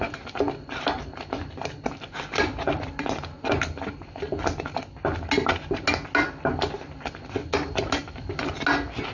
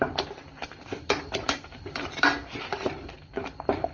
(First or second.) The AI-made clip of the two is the second